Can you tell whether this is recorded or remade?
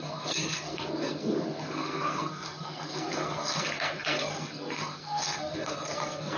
remade